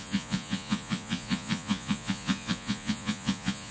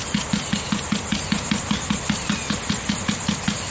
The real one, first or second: second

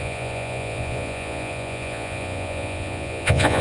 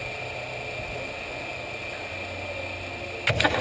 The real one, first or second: second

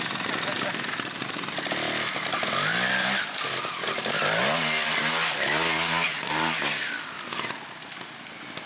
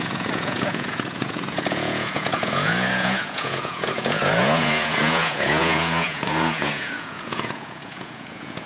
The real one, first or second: first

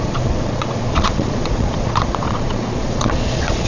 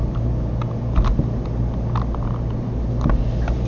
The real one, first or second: second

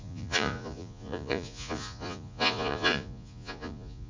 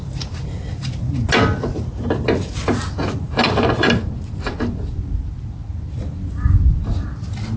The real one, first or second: second